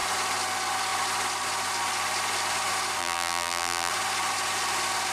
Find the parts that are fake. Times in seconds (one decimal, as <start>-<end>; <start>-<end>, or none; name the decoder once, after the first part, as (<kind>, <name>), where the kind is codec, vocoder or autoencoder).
3.0-3.9 (vocoder, BigVGAN v2)